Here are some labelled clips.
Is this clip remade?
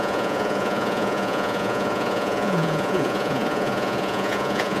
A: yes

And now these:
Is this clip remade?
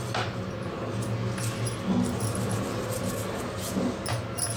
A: no